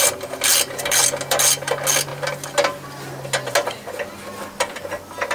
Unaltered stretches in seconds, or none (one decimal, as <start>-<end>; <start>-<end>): 0.0-5.3